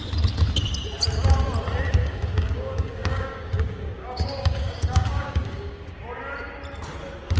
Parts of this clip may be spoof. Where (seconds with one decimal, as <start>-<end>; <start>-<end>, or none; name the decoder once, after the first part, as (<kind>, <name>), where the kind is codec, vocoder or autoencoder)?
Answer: 2.0-6.0 (codec, DAC)